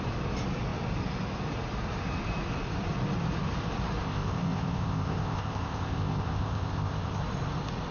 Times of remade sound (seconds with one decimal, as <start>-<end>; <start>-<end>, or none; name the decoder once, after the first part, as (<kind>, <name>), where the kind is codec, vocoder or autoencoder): 4.0-7.2 (codec, ZipCodec)